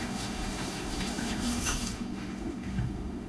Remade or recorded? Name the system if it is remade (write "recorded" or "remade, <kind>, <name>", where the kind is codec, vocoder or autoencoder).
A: remade, autoencoder, DAC-VAE